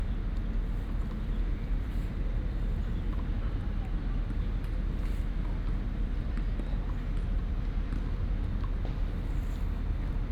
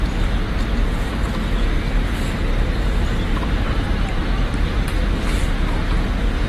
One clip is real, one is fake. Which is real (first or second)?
first